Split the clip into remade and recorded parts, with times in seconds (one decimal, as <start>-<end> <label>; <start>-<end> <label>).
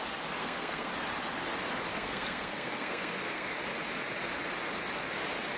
0.0-0.4 recorded; 0.4-0.9 remade; 0.9-1.9 recorded; 1.9-3.5 remade; 3.5-5.6 recorded